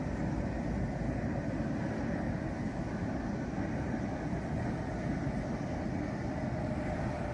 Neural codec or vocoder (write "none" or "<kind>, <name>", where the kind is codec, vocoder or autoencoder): none